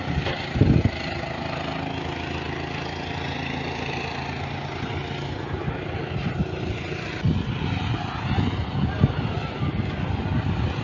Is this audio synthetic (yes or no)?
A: no